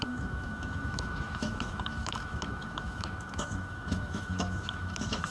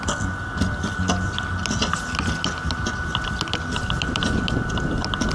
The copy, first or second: first